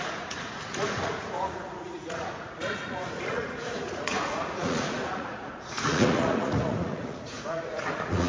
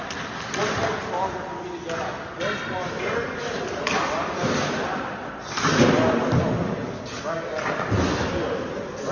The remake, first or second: first